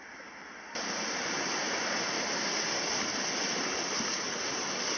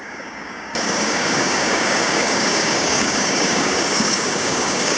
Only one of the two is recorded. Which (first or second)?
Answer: first